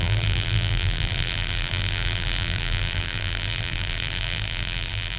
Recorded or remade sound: remade